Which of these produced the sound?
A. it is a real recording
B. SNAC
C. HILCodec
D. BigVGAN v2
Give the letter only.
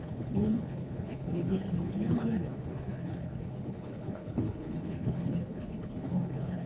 C